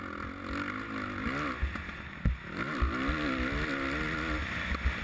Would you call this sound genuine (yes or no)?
yes